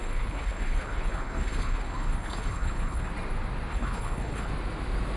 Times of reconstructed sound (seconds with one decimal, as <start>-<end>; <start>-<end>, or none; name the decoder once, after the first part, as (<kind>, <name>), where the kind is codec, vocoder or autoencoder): 0.0-3.1 (codec, HILCodec); 3.7-4.5